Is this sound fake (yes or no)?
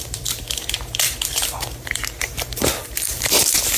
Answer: yes